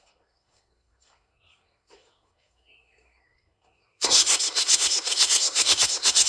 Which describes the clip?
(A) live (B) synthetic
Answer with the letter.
B